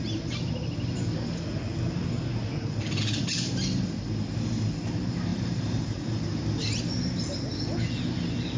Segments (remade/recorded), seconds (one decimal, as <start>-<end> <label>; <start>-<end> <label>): 0.0-5.3 recorded; 5.3-6.9 remade; 6.9-8.6 recorded